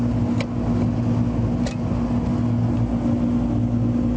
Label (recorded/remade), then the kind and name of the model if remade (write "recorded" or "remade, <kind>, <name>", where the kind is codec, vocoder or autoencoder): recorded